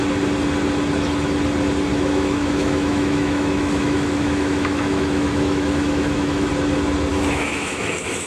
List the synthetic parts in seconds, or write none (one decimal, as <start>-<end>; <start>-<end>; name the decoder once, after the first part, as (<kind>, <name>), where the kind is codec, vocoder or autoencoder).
1.9-6.5 (autoencoder, DAC-VAE); 7.1-8.3